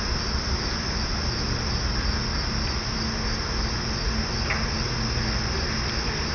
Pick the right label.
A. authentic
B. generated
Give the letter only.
A